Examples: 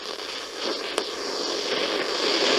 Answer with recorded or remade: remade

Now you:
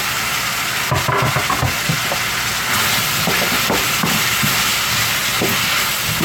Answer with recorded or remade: recorded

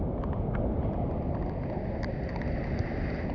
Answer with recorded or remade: recorded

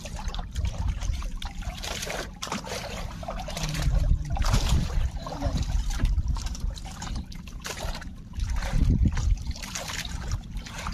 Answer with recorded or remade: remade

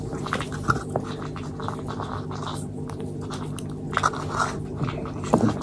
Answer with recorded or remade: recorded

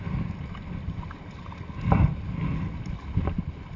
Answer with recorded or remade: recorded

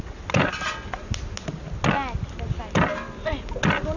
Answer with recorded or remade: recorded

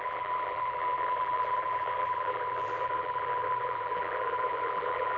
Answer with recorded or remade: remade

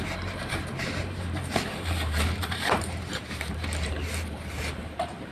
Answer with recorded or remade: remade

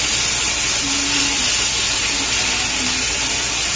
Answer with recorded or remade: recorded